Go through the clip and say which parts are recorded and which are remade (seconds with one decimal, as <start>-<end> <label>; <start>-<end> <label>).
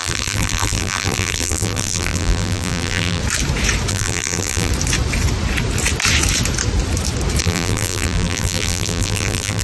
0.0-3.2 remade; 3.2-3.9 recorded; 3.9-4.7 remade; 4.7-7.4 recorded; 7.4-9.6 remade